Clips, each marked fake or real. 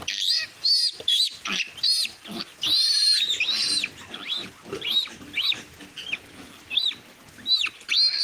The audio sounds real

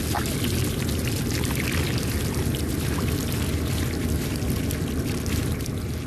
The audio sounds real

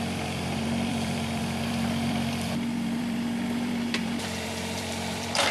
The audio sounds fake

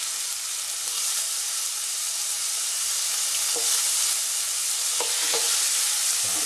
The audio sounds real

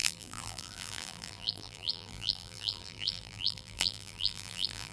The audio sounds fake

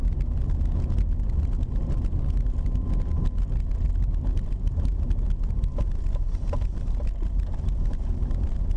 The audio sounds real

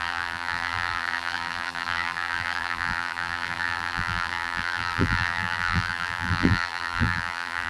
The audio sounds fake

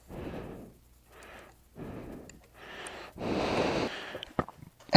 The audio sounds real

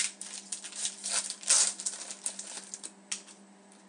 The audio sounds real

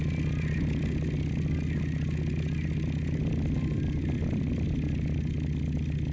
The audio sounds real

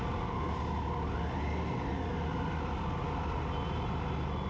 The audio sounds real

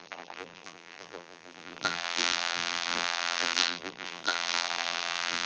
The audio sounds fake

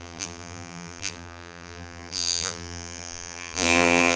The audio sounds fake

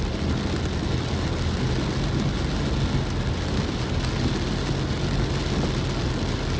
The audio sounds real